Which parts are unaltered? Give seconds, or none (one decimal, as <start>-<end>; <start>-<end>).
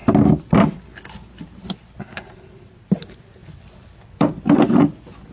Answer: 0.0-3.4; 4.6-5.3